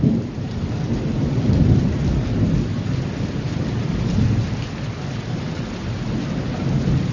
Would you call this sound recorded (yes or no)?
yes